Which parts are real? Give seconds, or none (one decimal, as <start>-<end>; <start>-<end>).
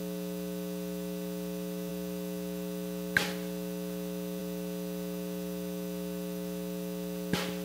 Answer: 0.0-7.6